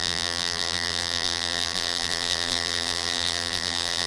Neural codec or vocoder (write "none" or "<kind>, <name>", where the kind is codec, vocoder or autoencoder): vocoder, BigVGAN v2